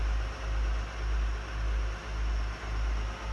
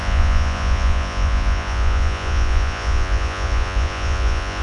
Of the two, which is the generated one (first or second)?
second